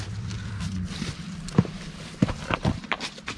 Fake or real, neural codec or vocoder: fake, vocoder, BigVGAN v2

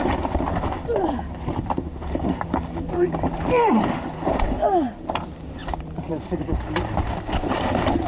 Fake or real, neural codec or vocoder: fake, vocoder, BigVGAN v2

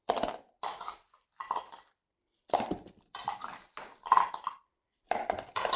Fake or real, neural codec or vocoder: fake, vocoder, BigVGAN v2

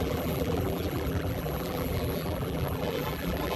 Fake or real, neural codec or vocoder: fake, vocoder, BigVGAN v2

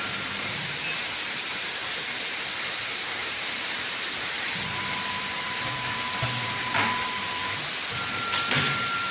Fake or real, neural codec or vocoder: fake, vocoder, BigVGAN v2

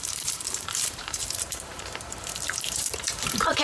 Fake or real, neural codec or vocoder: fake, vocoder, BigVGAN v2